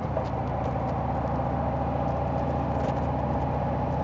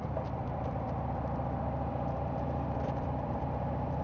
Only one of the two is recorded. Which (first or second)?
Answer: first